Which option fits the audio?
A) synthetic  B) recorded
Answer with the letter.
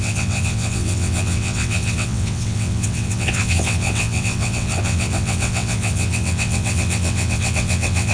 A